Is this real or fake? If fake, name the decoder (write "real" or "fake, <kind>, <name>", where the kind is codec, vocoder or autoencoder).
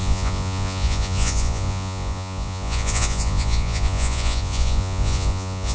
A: fake, vocoder, Vocos